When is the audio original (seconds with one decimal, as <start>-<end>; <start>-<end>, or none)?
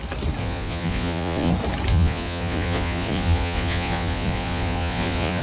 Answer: 0.0-0.4; 1.5-1.9